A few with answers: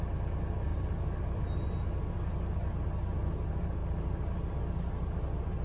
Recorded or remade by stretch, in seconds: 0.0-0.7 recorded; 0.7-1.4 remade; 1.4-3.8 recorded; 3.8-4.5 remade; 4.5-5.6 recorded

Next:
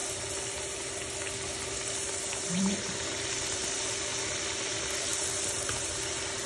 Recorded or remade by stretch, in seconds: 0.0-2.5 recorded; 2.5-4.1 remade; 4.1-4.6 recorded; 4.6-5.1 remade; 5.1-6.5 recorded

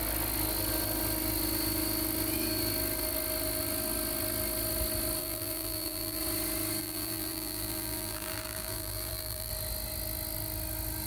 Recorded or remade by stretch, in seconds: 0.0-5.2 recorded; 5.2-6.2 remade; 6.2-6.8 recorded; 6.8-9.5 remade; 9.5-11.1 recorded

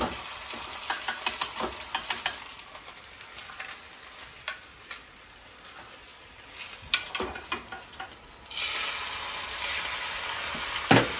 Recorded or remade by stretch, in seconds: 0.0-11.2 recorded

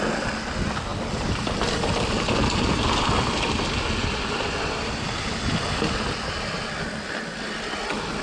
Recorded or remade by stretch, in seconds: 0.0-0.9 recorded; 0.9-1.6 remade; 1.6-4.0 recorded; 4.0-5.2 remade; 5.2-8.2 recorded

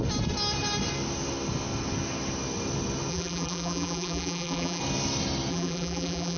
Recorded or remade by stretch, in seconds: 0.0-3.1 recorded; 3.1-4.8 remade; 4.8-5.5 recorded; 5.5-6.4 remade

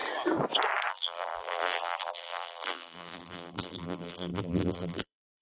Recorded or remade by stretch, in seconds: 0.0-0.9 recorded; 0.9-5.4 remade